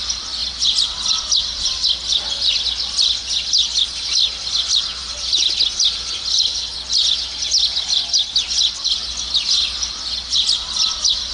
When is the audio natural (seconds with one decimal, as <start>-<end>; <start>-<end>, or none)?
0.0-11.3

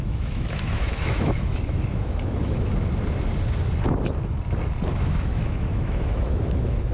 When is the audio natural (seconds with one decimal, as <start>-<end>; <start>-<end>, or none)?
2.7-4.9

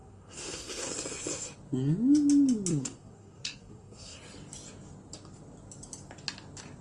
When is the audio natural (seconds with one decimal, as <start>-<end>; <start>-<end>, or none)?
0.9-2.7; 4.2-6.8

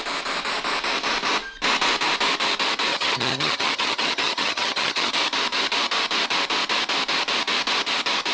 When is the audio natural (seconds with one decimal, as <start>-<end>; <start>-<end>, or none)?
0.0-2.9; 5.1-8.3